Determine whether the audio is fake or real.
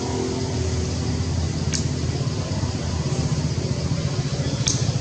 real